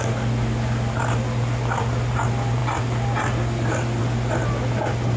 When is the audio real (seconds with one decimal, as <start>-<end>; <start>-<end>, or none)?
0.0-5.2

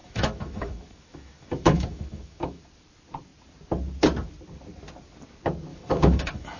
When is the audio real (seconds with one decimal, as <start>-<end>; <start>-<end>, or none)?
2.6-5.7

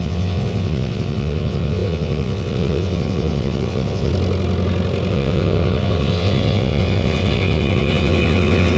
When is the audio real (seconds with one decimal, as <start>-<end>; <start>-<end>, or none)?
4.1-5.1